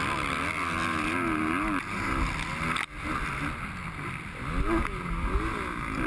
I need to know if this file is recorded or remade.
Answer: recorded